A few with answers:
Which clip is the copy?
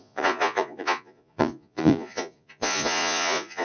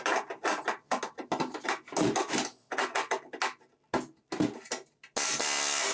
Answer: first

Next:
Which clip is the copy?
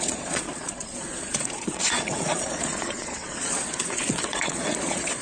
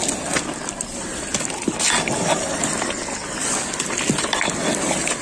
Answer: first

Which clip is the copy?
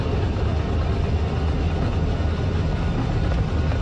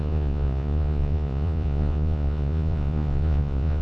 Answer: second